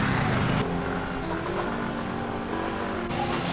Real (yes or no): yes